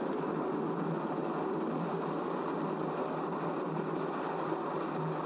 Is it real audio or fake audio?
real